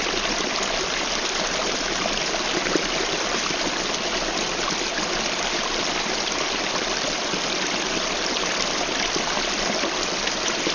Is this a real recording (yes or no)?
yes